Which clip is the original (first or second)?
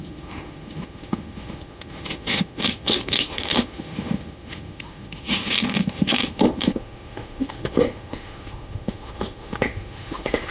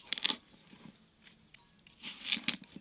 second